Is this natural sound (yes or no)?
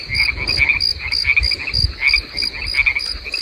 yes